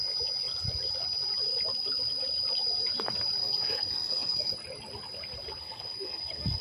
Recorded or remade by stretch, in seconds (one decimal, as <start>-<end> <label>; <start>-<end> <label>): 0.0-3.4 recorded; 3.4-4.5 remade; 4.5-5.6 recorded; 5.6-6.6 remade